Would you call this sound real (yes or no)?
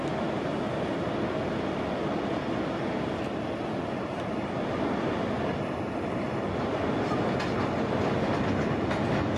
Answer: yes